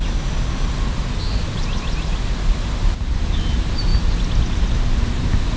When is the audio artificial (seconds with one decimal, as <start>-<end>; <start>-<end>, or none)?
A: none